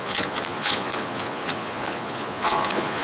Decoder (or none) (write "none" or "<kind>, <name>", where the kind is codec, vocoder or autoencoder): vocoder, Vocos